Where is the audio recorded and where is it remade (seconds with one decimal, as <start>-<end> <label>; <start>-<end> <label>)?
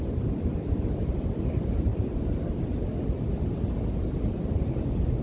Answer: 0.0-5.2 recorded